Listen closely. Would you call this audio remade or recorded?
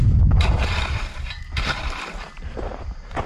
remade